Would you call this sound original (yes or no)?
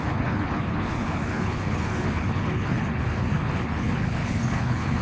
no